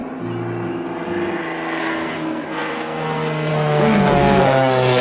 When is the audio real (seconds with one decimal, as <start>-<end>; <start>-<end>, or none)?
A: 0.0-1.8